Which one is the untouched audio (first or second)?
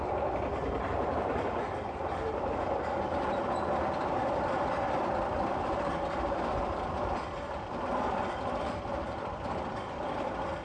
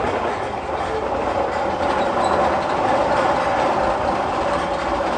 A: second